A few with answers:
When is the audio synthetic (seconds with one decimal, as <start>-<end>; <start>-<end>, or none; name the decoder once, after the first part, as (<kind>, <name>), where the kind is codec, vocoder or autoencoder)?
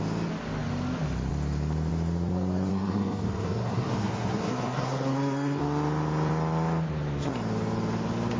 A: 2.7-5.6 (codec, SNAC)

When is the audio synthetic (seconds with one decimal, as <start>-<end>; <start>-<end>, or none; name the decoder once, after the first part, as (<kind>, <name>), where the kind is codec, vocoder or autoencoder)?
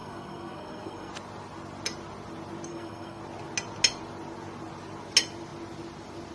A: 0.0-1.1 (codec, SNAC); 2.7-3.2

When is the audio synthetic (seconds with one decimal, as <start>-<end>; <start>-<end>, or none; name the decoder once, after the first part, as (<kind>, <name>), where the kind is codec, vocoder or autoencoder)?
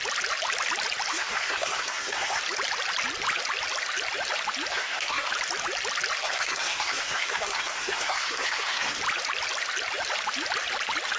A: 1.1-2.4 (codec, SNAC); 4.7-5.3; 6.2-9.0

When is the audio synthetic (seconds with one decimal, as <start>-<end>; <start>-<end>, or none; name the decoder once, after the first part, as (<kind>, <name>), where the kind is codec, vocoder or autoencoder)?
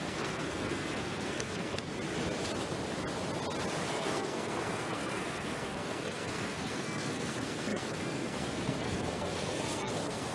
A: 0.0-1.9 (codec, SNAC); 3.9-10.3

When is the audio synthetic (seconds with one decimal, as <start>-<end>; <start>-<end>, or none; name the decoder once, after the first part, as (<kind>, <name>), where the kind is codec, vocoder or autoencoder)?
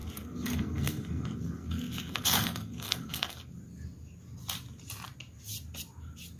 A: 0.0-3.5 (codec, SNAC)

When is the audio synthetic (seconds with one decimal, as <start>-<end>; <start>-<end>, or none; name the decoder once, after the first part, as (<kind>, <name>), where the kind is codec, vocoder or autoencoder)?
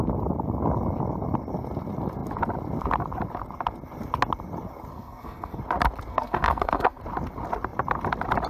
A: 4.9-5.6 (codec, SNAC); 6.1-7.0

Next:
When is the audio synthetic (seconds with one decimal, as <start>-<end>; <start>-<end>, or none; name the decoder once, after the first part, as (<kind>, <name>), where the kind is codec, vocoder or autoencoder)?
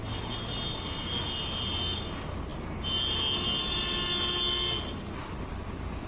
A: none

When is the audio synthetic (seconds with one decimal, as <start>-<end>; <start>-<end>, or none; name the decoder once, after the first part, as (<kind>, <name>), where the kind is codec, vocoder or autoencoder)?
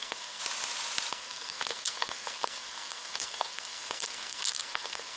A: 0.0-0.4 (codec, SNAC); 1.1-5.2